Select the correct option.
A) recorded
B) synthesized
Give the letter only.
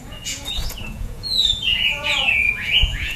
B